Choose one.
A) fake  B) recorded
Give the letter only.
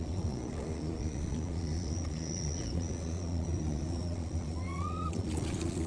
A